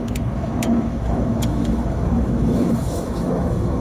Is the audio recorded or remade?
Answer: remade